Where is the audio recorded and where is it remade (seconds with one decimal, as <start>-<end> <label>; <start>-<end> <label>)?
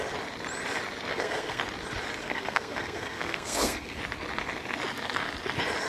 0.0-1.1 recorded; 1.1-1.6 remade; 1.6-2.2 recorded; 2.2-4.0 remade; 4.0-5.9 recorded